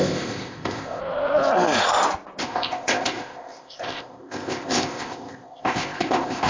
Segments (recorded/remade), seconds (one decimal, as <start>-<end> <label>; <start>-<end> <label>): 0.0-1.0 remade; 1.0-2.4 recorded; 2.4-6.5 remade